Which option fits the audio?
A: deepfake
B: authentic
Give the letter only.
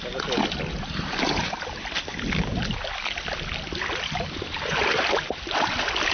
B